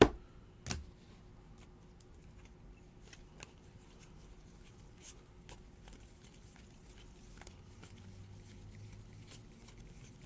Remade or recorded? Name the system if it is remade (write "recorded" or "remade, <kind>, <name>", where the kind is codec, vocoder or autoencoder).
recorded